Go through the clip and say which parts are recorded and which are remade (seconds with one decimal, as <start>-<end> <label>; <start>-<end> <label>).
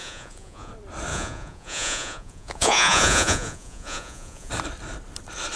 0.0-0.7 remade; 0.7-1.1 recorded; 1.1-4.5 remade; 4.5-5.6 recorded